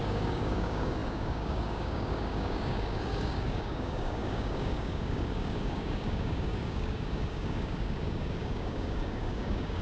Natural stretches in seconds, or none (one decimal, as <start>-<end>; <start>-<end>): none